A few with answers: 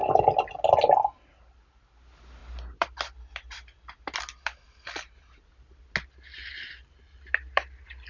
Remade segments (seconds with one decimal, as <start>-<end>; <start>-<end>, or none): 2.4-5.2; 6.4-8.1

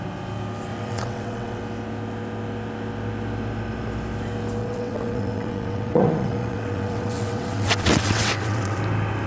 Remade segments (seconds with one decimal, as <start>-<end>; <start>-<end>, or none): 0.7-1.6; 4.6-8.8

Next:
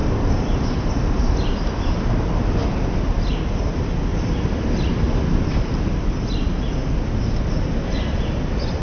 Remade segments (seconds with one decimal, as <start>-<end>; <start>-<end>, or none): 0.0-2.1; 4.1-5.9

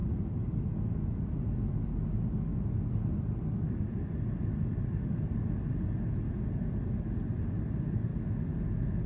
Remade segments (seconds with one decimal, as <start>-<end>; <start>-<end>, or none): none